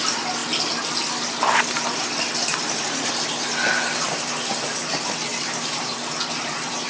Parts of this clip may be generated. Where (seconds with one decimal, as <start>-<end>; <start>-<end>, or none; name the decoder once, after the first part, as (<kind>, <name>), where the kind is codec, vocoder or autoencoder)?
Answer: 2.5-3.1 (vocoder, BigVGAN v2); 5.3-6.0